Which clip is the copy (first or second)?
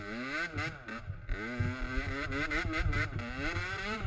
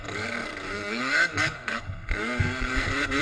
second